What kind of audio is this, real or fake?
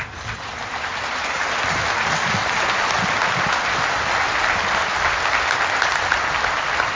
real